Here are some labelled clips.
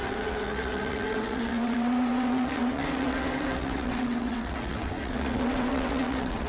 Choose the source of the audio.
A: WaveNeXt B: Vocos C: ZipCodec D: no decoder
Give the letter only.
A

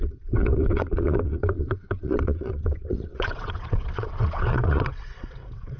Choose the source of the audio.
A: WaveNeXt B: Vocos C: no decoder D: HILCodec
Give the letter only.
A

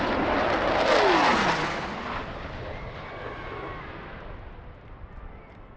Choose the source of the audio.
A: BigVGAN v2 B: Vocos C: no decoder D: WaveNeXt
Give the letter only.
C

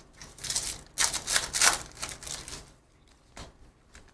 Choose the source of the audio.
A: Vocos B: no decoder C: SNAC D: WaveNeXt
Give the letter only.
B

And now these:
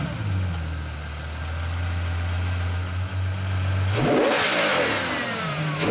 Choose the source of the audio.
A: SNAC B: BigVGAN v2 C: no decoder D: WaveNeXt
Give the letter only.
C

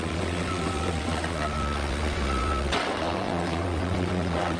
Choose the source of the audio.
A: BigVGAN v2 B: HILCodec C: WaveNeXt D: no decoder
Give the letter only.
C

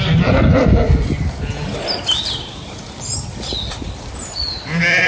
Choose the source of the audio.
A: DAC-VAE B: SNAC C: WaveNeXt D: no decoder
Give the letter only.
D